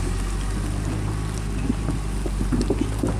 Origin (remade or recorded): recorded